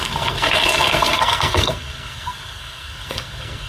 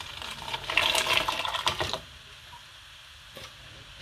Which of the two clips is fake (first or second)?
first